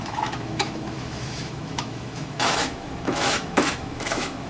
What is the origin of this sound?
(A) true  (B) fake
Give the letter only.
B